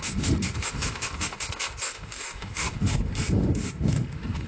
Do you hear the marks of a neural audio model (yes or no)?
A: yes